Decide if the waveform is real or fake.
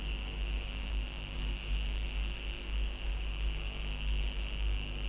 fake